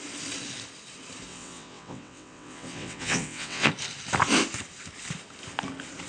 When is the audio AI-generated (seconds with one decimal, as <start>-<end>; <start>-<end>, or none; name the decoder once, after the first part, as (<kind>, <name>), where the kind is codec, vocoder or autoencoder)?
1.3-3.7 (vocoder, WaveNeXt)